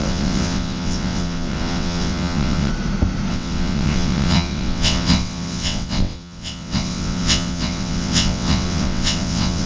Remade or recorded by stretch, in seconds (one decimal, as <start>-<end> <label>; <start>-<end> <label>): 0.0-2.7 remade; 2.7-3.3 recorded; 3.3-9.7 remade